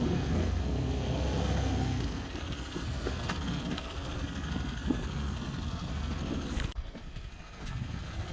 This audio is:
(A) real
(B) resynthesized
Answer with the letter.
B